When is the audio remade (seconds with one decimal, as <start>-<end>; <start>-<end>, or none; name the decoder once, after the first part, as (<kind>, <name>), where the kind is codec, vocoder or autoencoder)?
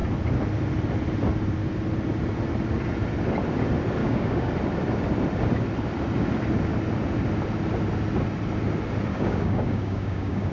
4.0-4.5 (codec, DAC); 9.1-10.5